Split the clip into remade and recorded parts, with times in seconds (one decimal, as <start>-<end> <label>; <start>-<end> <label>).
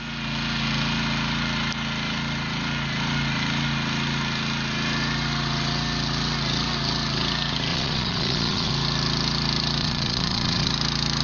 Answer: 0.0-7.7 recorded; 7.7-8.7 remade; 8.7-9.8 recorded; 9.8-10.7 remade; 10.7-11.2 recorded